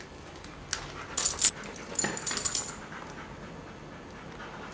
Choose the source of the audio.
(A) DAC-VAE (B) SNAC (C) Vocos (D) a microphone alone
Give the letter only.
D